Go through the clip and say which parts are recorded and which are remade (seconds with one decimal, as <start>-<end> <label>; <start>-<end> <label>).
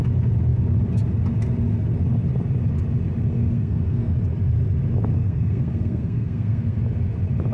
0.0-3.3 recorded; 3.3-4.1 remade; 4.1-5.1 recorded; 5.1-6.8 remade; 6.8-7.5 recorded